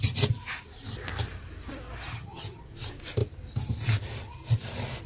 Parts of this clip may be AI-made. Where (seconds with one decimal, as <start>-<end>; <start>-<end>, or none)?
2.1-2.6

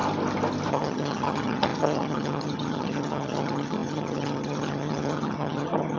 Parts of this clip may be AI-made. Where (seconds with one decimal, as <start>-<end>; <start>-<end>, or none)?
0.7-6.0

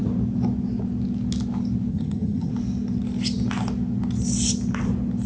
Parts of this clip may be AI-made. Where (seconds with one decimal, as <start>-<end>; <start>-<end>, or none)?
1.9-2.5

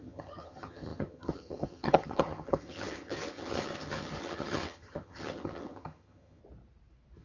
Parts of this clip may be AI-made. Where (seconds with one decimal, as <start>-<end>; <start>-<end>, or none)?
0.0-6.4

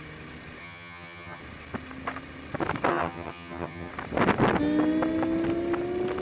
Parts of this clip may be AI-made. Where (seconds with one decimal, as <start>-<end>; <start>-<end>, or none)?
0.6-1.4; 2.9-3.9